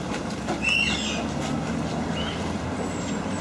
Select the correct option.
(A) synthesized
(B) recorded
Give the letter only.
B